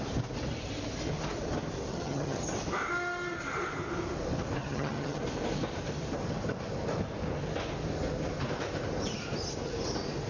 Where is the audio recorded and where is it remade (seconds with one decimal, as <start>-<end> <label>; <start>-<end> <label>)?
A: 0.0-1.9 recorded; 1.9-2.4 remade; 2.4-4.6 recorded; 4.6-5.2 remade; 5.2-10.3 recorded